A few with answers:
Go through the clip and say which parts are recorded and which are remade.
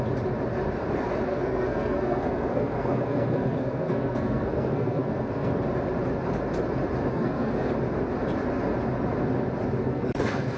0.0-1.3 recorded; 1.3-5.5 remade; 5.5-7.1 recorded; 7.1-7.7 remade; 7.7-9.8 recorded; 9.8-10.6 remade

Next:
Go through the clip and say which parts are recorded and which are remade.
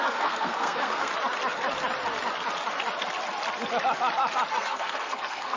0.0-1.1 remade; 1.1-4.5 recorded; 4.5-5.6 remade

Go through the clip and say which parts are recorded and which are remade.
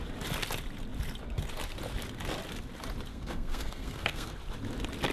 0.0-3.1 recorded; 3.1-4.3 remade; 4.3-5.1 recorded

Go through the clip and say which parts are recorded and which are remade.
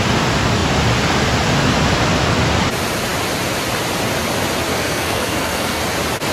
0.0-4.7 recorded; 4.7-5.8 remade; 5.8-6.3 recorded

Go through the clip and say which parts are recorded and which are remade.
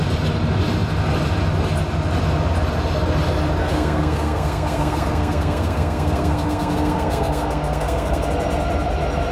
0.0-3.6 recorded; 3.6-8.3 remade; 8.3-9.3 recorded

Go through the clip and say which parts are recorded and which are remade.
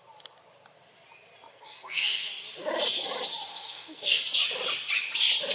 0.0-1.5 recorded; 1.5-2.3 remade; 2.3-3.5 recorded; 3.5-4.2 remade; 4.2-5.5 recorded